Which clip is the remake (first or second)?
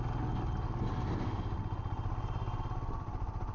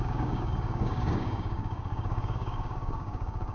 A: second